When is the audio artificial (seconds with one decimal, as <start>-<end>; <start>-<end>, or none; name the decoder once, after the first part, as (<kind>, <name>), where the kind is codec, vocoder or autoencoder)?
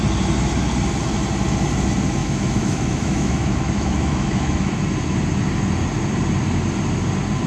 2.2-4.7 (autoencoder, DAC-VAE)